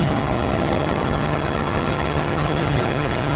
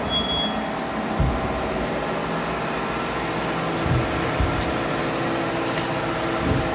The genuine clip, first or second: second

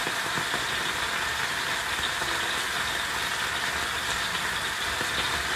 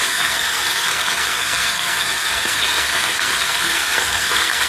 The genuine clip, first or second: first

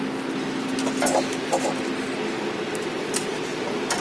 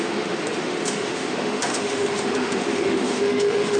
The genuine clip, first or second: first